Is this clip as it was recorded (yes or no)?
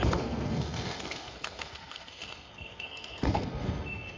no